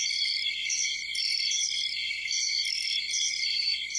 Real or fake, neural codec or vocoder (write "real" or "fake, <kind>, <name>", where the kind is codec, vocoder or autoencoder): fake, vocoder, BigVGAN v2